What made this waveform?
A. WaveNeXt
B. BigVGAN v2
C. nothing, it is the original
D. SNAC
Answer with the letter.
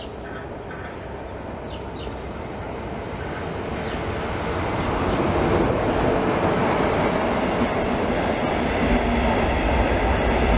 C